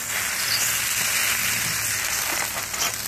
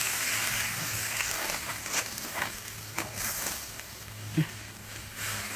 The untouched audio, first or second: first